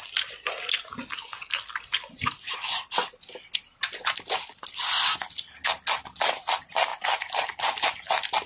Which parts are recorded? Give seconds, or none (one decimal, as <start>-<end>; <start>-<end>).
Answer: 0.0-8.5

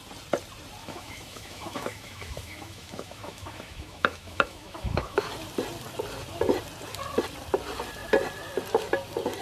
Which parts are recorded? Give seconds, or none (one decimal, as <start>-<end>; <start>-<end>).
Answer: 0.0-0.8; 5.3-9.4

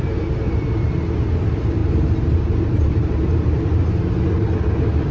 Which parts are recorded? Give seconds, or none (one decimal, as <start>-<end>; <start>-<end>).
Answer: 0.0-1.8; 3.9-5.1

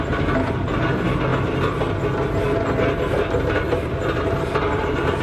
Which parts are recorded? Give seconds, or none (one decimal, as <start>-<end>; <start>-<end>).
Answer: 1.3-3.3

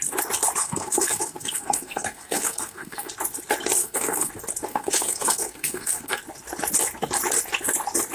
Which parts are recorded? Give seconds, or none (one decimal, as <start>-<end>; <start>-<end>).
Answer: 0.0-0.6; 3.1-3.8; 4.3-4.7; 6.2-8.1

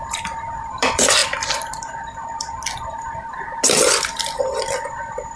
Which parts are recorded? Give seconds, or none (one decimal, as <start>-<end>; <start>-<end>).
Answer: 1.2-4.4

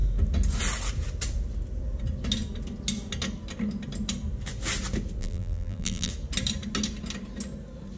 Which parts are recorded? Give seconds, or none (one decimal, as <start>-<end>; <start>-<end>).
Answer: 0.0-5.2; 6.1-8.0